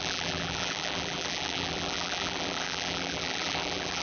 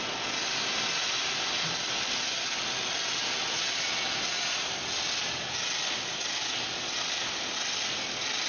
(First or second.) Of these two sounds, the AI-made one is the first